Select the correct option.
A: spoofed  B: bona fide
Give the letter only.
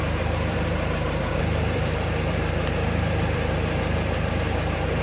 A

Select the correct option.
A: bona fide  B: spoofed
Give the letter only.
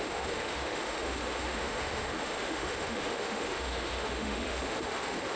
B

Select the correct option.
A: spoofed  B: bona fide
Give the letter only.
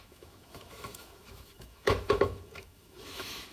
A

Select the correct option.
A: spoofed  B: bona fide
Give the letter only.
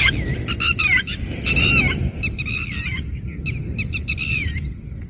B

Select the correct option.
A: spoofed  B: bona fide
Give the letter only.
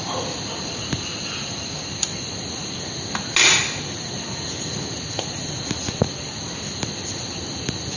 B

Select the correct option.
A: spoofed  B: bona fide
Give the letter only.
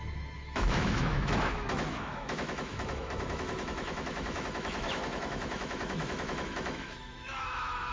A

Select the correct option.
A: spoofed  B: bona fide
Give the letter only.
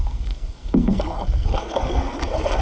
A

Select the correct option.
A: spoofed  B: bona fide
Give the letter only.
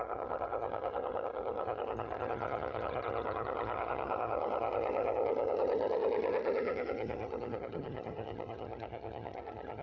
A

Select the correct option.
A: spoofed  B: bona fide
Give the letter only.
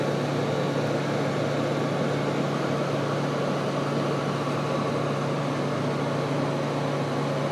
B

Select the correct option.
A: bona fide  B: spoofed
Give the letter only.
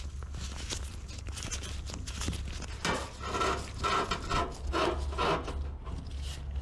A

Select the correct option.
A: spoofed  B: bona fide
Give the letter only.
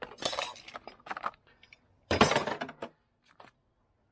B